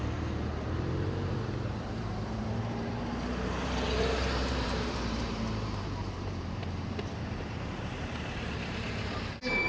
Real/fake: fake